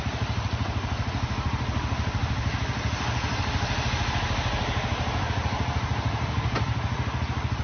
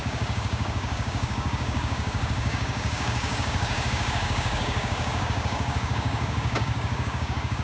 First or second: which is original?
first